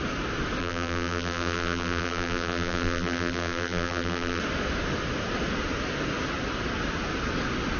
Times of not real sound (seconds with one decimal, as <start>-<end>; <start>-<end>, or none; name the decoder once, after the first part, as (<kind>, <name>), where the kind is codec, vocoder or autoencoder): 0.6-4.4 (vocoder, BigVGAN v2)